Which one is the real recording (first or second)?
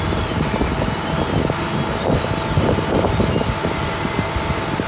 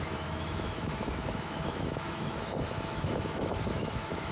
first